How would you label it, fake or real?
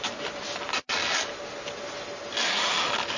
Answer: real